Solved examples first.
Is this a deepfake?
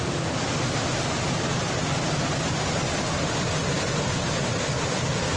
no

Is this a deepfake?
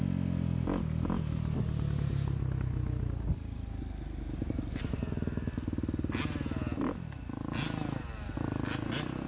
no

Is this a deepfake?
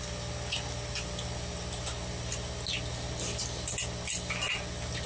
no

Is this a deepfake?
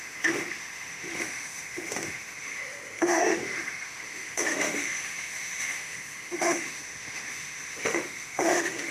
yes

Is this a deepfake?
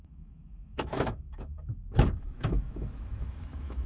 yes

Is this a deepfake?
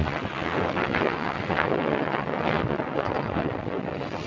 yes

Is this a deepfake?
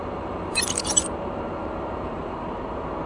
yes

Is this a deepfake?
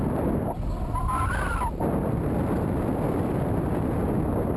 no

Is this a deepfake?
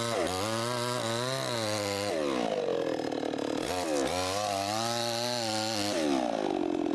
no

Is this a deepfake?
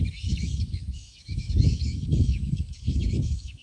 yes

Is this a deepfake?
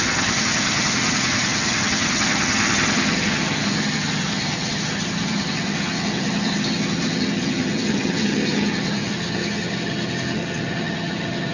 yes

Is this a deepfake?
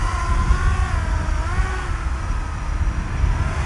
no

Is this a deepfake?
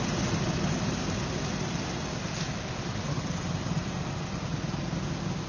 no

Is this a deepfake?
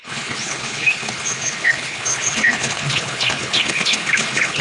yes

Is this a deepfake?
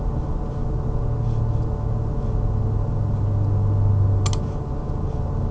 no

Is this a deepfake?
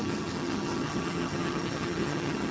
yes